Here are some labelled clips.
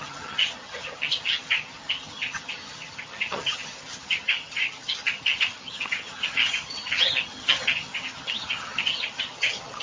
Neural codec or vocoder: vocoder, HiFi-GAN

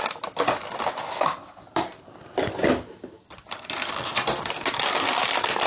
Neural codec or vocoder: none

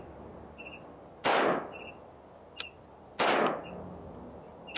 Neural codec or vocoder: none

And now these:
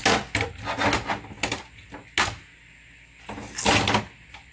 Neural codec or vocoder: none